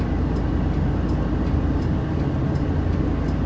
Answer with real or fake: real